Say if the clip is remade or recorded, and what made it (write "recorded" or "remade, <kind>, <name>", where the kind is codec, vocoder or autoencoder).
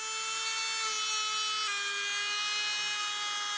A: recorded